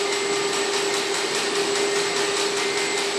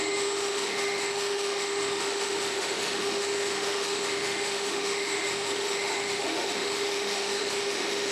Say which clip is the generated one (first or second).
second